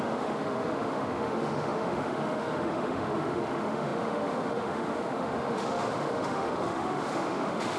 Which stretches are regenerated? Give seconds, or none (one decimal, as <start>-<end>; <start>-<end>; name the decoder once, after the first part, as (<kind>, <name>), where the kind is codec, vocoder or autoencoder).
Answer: 0.0-7.8 (autoencoder, DAC-VAE)